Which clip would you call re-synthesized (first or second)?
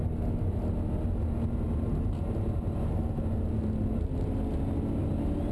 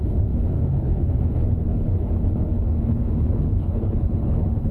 second